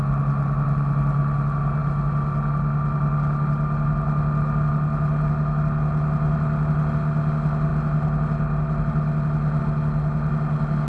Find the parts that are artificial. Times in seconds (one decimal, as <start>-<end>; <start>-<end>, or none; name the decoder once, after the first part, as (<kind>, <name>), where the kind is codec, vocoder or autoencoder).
none